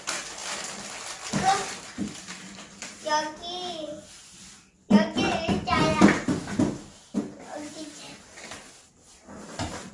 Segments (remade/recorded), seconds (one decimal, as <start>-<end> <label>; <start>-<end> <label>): 0.0-0.4 recorded; 0.4-3.0 remade; 3.0-9.9 recorded